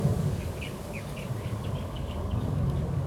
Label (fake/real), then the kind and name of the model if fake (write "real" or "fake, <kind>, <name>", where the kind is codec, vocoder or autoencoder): fake, codec, DAC